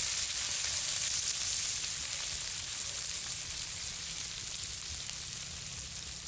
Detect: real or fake real